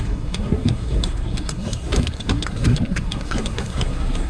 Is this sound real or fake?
fake